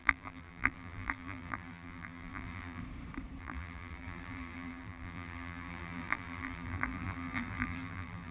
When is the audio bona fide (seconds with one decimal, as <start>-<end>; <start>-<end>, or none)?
2.8-3.4